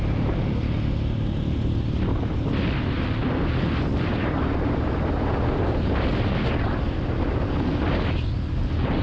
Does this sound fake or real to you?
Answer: real